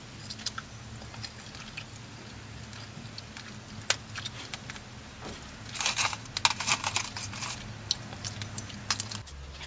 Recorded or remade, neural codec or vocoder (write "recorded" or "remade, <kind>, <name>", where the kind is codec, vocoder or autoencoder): recorded